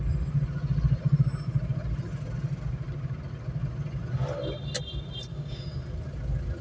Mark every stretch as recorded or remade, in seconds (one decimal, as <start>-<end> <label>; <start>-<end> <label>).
0.0-5.3 recorded; 5.3-5.8 remade; 5.8-6.6 recorded